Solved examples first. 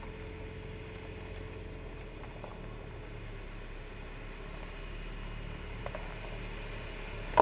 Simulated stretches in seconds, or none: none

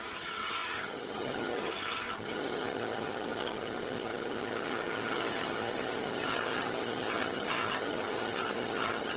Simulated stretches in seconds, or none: 0.0-9.2 (vocoder, HiFi-GAN)

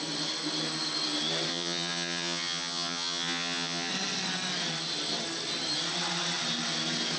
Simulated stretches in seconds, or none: 1.5-3.9 (vocoder, HiFi-GAN)

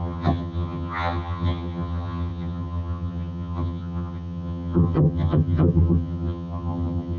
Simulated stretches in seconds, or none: 0.0-7.2 (vocoder, HiFi-GAN)

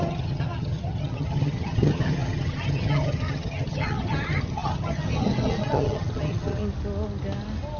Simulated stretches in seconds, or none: 0.0-6.6 (vocoder, HiFi-GAN)

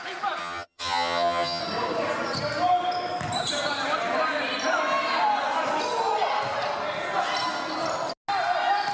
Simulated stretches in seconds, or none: 0.4-1.6 (vocoder, HiFi-GAN)

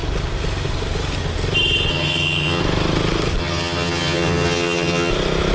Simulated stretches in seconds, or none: 1.9-2.6 (vocoder, HiFi-GAN); 3.4-5.1